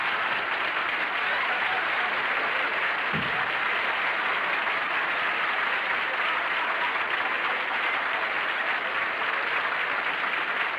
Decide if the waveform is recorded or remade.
recorded